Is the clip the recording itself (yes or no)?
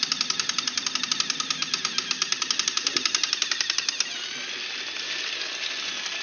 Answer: yes